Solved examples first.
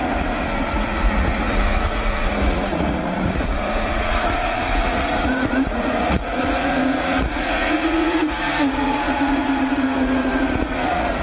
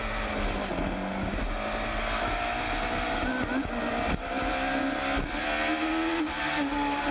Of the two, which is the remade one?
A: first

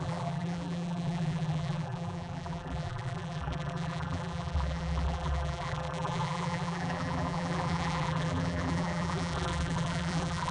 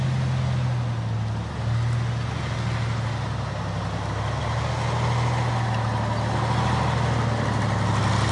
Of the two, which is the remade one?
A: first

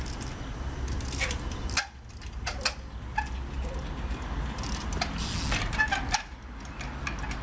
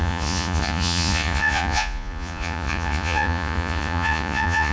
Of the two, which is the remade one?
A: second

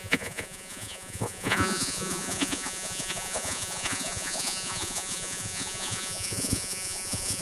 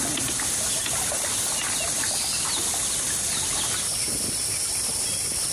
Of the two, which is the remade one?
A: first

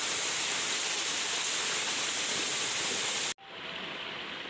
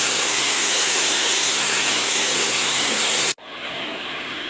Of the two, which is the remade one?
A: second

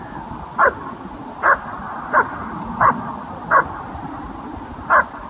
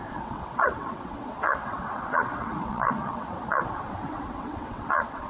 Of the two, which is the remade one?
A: second